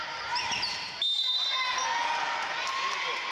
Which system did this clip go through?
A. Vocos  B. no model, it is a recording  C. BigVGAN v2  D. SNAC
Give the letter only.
B